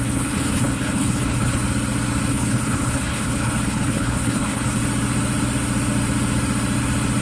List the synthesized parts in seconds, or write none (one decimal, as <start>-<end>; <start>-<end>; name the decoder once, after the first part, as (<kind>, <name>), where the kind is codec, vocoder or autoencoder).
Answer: 0.0-1.6 (codec, HILCodec); 2.3-4.8